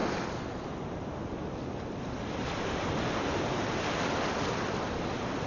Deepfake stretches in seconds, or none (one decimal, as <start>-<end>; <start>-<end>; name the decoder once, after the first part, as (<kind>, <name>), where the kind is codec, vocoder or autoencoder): none